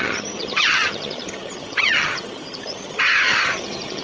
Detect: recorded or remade remade